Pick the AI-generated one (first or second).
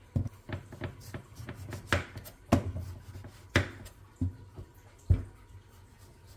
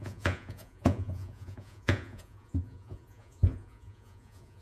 second